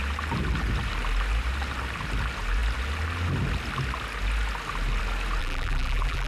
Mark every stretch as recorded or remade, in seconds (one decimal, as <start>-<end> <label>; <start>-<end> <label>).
0.0-5.4 recorded; 5.4-6.3 remade